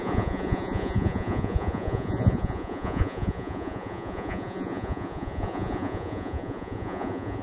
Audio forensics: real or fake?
fake